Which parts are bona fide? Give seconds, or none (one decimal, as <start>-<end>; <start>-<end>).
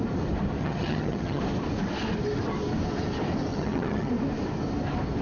0.0-0.6; 1.4-3.5; 4.1-5.2